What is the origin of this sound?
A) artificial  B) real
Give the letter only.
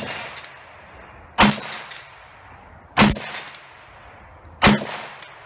B